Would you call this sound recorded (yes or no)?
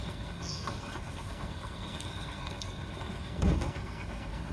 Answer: no